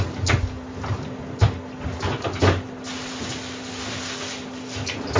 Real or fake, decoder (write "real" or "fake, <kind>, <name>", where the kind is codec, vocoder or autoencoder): real